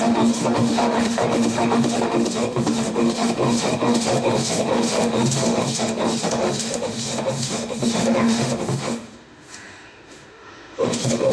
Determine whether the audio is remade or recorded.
remade